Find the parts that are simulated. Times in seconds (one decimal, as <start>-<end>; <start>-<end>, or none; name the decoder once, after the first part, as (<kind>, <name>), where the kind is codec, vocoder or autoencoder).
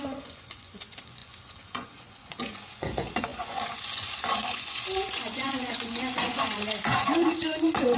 0.0-8.0 (vocoder, Vocos)